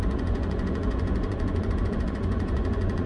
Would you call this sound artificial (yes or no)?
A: yes